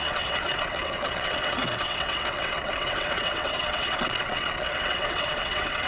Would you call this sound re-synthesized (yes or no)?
yes